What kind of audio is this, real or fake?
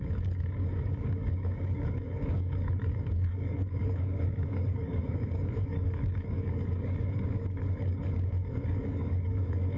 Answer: fake